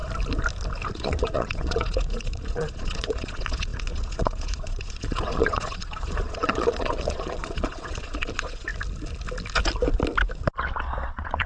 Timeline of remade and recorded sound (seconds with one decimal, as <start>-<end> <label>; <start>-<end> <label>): 0.0-0.9 recorded; 0.9-8.7 remade; 8.7-11.1 recorded; 11.1-11.5 remade